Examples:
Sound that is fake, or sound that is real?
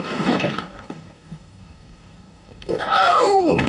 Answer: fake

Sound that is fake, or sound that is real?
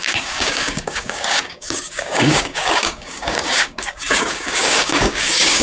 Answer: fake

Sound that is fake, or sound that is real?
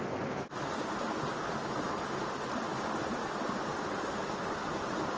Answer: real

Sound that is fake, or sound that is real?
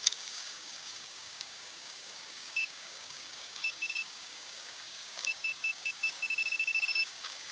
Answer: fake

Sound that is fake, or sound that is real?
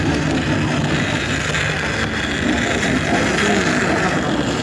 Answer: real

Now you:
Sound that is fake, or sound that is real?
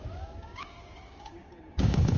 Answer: fake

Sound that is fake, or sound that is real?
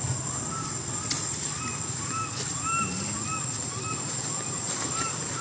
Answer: real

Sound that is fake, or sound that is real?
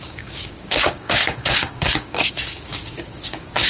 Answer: fake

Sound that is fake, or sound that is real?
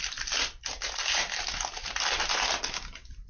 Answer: real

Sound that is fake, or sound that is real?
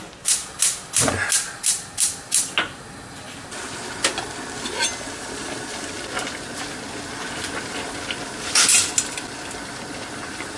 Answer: real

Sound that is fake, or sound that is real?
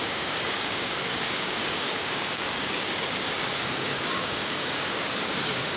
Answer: fake